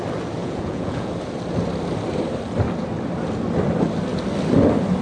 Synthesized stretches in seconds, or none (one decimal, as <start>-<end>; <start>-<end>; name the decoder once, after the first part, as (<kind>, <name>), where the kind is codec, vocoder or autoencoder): 0.4-1.1 (vocoder, Vocos)